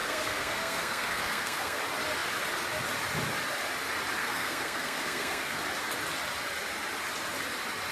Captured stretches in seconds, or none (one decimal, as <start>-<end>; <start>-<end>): 1.8-4.2; 5.6-7.9